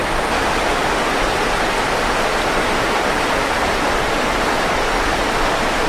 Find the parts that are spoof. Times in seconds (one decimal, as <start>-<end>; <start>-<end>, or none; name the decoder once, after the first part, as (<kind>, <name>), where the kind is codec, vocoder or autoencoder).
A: 0.0-1.0 (vocoder, BigVGAN v2); 3.4-3.9